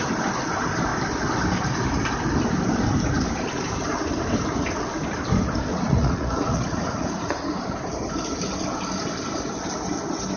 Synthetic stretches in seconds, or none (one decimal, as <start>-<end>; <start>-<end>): 5.7-7.6

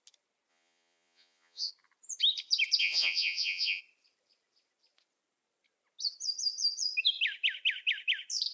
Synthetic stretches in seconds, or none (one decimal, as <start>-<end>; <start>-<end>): 0.5-1.7; 2.8-3.8

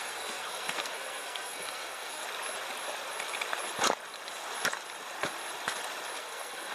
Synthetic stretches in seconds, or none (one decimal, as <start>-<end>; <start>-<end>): 0.0-2.2; 6.2-6.7

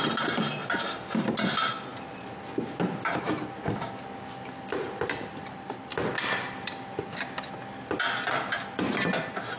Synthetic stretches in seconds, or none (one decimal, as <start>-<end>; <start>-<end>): none

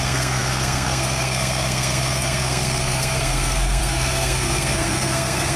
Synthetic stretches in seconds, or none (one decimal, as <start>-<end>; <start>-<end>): 0.0-5.6

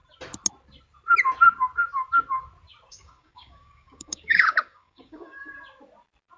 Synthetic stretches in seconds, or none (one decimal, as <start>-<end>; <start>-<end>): 2.9-5.5

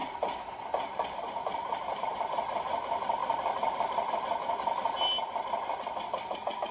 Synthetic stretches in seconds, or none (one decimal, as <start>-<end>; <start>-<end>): 0.0-2.0; 3.2-4.1